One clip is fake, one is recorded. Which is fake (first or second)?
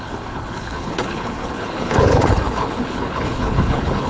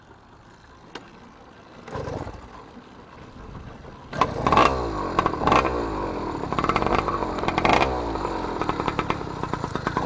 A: first